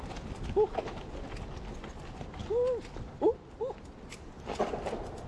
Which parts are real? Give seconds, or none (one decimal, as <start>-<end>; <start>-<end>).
0.0-5.3